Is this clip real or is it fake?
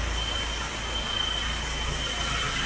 real